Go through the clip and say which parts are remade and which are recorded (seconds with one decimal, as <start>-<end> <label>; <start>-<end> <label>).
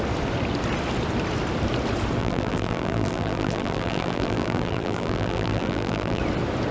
0.0-2.2 recorded; 2.2-6.2 remade; 6.2-6.7 recorded